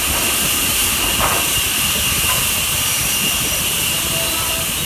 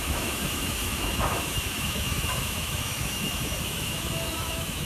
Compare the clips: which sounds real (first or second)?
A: first